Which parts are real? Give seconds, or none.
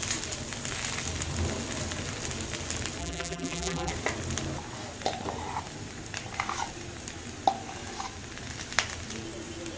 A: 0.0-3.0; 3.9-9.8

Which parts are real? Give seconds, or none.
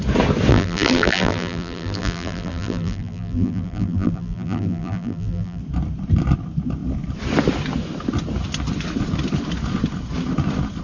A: 0.0-0.5; 5.6-10.8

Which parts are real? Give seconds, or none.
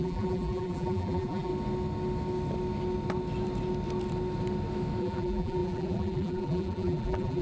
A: 1.5-5.0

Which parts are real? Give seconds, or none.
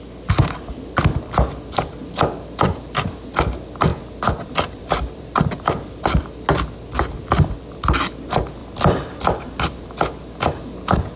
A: 0.0-3.9; 6.2-8.6; 9.6-11.2